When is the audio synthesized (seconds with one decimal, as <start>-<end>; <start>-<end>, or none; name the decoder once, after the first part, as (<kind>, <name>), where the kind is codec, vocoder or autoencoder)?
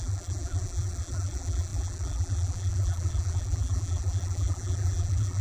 0.0-5.4 (vocoder, BigVGAN v2)